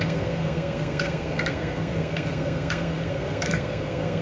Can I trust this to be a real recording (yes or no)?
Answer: no